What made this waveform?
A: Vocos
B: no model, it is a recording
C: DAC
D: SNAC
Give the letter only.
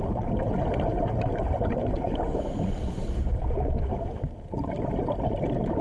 B